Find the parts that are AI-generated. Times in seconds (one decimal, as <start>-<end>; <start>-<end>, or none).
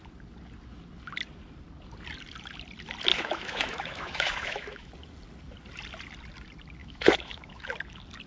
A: 3.1-4.9; 6.8-7.7